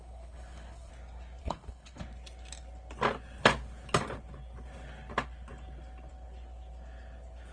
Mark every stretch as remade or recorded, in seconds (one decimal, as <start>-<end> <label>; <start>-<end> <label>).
0.0-0.9 remade; 0.9-1.4 recorded; 1.4-2.0 remade; 2.0-7.5 recorded